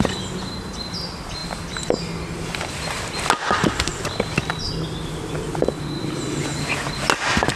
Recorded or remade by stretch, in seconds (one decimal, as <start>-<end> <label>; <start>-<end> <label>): 0.0-7.6 recorded